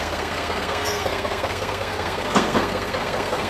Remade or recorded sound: remade